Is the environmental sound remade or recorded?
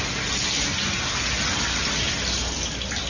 recorded